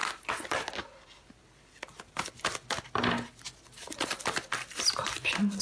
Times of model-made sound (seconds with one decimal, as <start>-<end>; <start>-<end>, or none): 0.0-2.5; 4.4-5.6